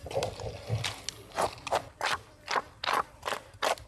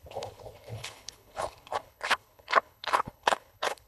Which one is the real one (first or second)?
first